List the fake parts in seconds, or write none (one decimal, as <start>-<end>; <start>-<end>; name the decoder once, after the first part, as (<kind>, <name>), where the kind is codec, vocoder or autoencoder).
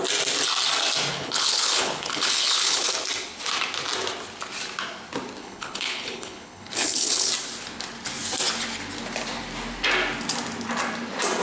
1.1-2.9 (codec, HILCodec); 5.4-7.3